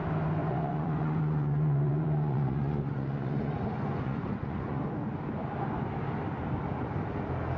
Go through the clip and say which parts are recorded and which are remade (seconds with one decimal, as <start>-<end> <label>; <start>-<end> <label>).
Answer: 0.0-0.4 recorded; 0.4-4.8 remade; 4.8-7.6 recorded